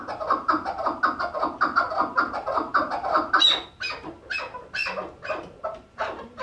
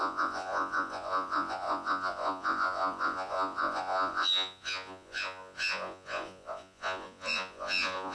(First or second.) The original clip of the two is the first